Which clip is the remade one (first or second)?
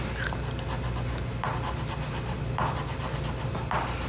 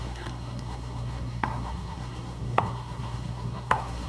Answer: second